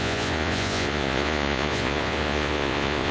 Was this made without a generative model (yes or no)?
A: no